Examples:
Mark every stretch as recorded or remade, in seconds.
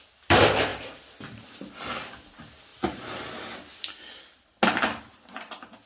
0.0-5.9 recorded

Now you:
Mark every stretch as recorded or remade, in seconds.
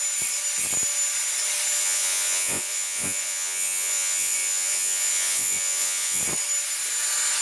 0.0-1.8 recorded; 1.8-6.2 remade; 6.2-7.4 recorded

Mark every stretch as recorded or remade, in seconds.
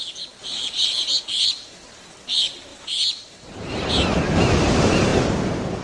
0.0-0.4 recorded; 0.4-1.5 remade; 1.5-2.7 recorded; 2.7-3.9 remade; 3.9-5.8 recorded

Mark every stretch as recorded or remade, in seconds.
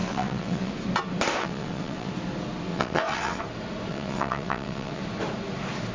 0.0-0.7 remade; 0.7-1.4 recorded; 1.4-2.1 remade; 2.1-2.7 recorded; 2.7-3.4 remade; 3.4-3.9 recorded; 3.9-5.0 remade; 5.0-5.9 recorded